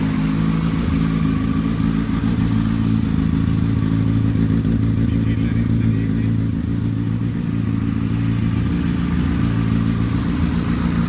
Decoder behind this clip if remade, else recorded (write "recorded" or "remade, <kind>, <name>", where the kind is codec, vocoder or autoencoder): recorded